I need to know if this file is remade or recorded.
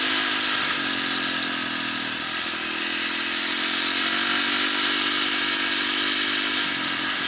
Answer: recorded